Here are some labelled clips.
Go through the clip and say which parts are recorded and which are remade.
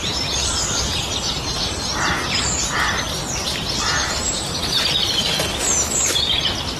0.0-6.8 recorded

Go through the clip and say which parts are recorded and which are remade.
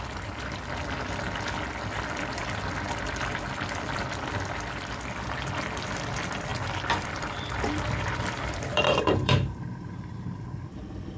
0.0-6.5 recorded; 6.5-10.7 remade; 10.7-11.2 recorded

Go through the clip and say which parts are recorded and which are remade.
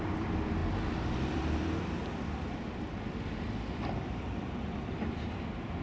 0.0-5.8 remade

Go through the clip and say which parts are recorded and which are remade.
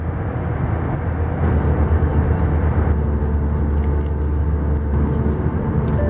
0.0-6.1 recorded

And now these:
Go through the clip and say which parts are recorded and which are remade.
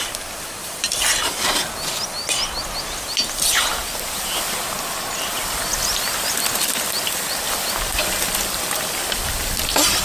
0.0-10.0 recorded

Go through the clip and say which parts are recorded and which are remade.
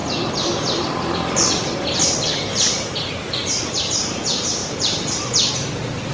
0.0-3.6 recorded; 3.6-6.1 remade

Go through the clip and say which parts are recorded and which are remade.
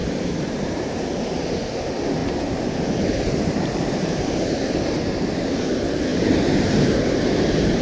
0.0-1.1 remade; 1.1-2.2 recorded; 2.2-4.7 remade; 4.7-6.1 recorded; 6.1-7.8 remade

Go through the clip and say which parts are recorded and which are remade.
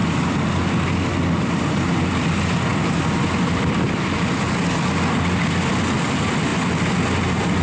0.0-7.6 recorded